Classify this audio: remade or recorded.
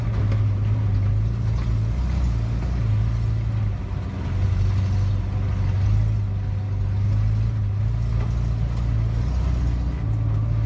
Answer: recorded